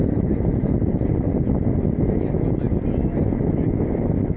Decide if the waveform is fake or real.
real